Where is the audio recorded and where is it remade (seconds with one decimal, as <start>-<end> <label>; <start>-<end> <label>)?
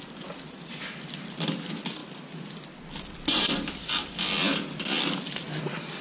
0.0-6.0 recorded